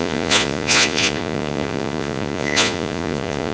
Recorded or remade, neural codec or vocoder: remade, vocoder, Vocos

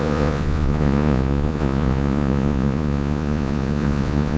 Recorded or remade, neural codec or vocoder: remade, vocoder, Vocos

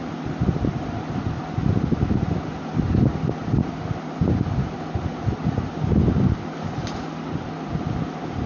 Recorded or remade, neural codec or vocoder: recorded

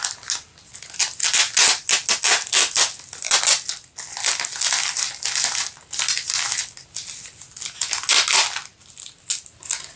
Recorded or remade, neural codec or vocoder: recorded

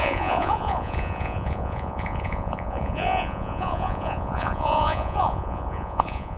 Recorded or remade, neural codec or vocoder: remade, vocoder, Vocos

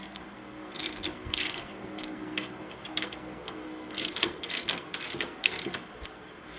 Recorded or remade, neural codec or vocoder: remade, codec, SNAC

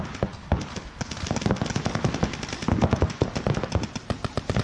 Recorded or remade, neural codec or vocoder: recorded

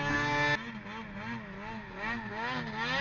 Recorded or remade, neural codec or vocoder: recorded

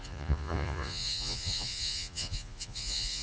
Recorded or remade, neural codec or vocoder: remade, vocoder, Vocos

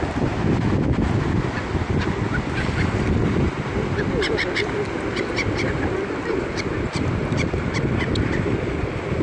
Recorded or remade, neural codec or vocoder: recorded